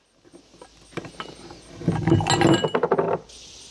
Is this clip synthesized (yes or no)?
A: no